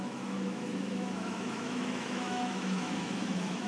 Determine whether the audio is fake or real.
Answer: fake